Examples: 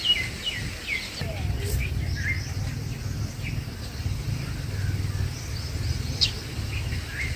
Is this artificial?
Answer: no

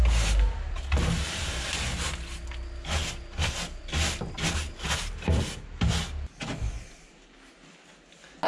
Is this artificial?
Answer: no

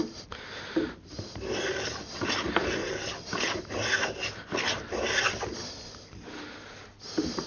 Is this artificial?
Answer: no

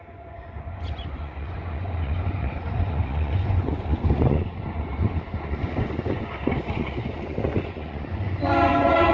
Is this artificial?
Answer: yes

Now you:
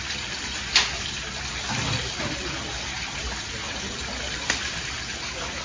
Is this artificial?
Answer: no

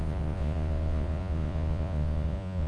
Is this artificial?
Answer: yes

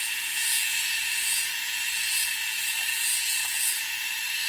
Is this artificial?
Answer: yes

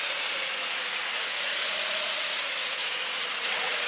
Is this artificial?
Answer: yes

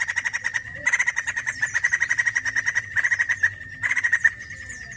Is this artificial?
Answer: no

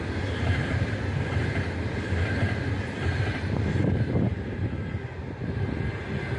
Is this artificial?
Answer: no